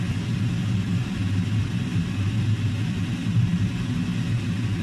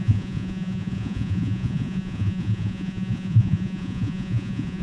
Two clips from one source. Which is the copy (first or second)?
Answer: second